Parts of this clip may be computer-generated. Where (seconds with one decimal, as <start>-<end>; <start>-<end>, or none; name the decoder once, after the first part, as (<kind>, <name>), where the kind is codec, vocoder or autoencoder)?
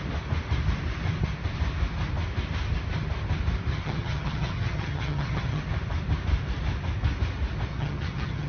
3.7-5.6 (vocoder, HiFi-GAN); 7.7-8.5